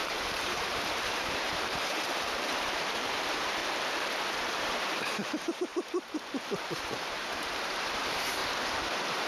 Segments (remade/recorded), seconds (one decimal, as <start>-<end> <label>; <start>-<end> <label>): 0.0-3.6 remade; 3.6-4.6 recorded; 4.6-5.7 remade; 5.7-6.5 recorded; 6.5-8.4 remade; 8.4-8.9 recorded; 8.9-9.3 remade